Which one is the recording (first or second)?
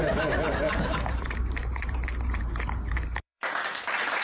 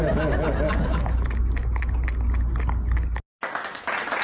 second